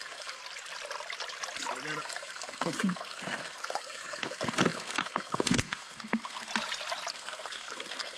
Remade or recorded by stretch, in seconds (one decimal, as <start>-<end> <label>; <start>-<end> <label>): 0.0-0.4 remade; 0.4-2.0 recorded; 2.0-6.5 remade; 6.5-7.1 recorded; 7.1-8.2 remade